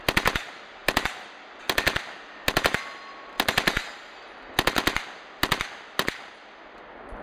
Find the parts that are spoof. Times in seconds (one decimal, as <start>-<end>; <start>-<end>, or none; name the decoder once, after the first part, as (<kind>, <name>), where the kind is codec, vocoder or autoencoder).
none